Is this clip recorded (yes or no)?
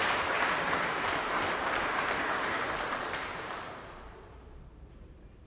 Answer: no